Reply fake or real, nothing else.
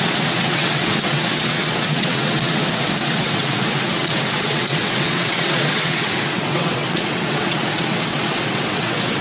fake